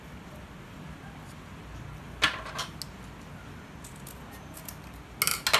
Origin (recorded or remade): recorded